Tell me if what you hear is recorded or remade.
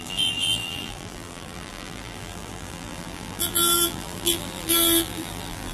remade